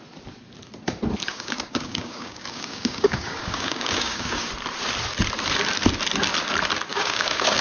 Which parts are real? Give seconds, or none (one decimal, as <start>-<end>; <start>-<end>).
0.0-1.3; 4.5-6.9